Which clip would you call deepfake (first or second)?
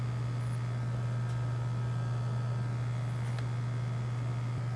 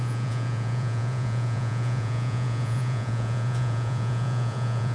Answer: second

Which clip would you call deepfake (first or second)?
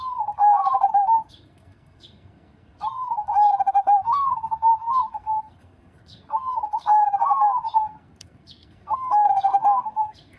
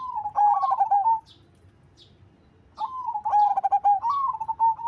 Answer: first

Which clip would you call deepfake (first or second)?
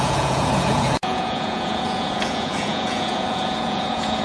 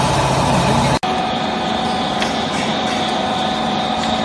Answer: first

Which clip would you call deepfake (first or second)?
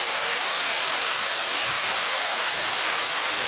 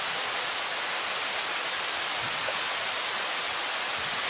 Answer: first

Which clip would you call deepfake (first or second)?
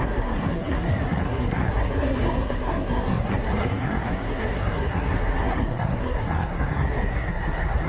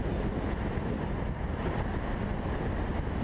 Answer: first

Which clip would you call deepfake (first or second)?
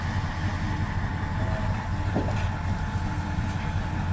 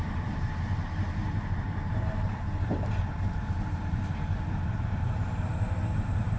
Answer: second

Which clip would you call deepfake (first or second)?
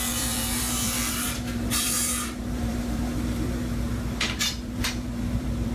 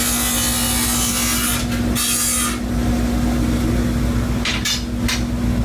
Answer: first